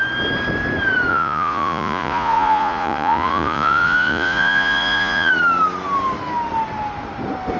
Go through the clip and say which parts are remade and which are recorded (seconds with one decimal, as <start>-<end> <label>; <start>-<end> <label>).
0.0-1.1 recorded; 1.1-5.3 remade; 5.3-7.6 recorded